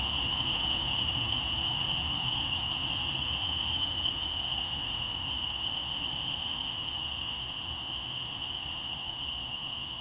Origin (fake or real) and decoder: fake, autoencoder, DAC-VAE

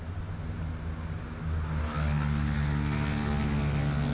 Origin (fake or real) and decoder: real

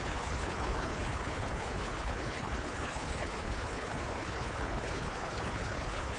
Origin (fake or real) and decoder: fake, codec, HILCodec